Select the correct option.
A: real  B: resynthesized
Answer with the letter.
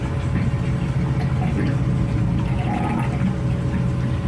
A